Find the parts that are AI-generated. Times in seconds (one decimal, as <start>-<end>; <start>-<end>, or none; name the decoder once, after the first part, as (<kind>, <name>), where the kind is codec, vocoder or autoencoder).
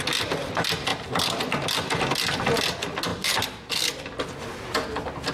none